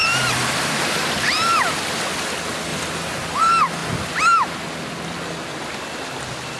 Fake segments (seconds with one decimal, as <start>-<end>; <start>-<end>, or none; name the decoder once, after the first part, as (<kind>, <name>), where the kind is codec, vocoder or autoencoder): 0.0-1.7 (vocoder, BigVGAN v2); 2.7-3.4